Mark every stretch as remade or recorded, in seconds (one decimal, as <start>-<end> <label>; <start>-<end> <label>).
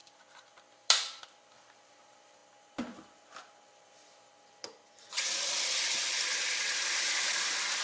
0.0-2.4 remade; 2.4-3.7 recorded; 3.7-7.8 remade